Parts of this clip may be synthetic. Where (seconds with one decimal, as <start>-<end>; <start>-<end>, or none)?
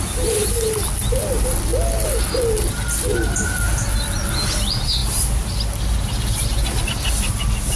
none